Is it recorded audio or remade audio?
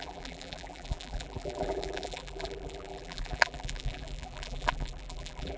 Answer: remade